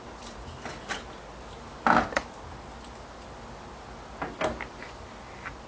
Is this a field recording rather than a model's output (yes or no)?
yes